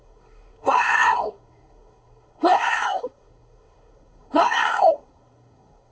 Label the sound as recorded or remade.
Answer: remade